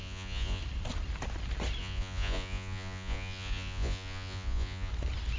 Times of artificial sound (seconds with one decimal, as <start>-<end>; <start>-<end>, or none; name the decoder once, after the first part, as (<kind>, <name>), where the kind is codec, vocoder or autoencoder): 0.0-0.6 (vocoder, Vocos); 1.8-4.9